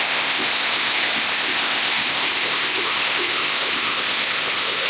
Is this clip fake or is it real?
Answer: fake